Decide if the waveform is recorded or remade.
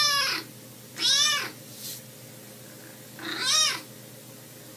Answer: recorded